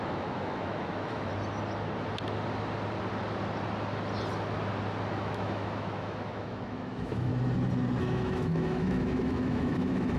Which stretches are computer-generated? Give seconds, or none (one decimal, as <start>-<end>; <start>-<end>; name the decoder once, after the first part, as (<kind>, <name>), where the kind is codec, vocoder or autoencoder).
0.0-1.3 (autoencoder, DAC-VAE); 5.1-7.3; 8.0-10.2